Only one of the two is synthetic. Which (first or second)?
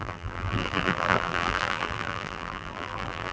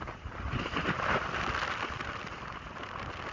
first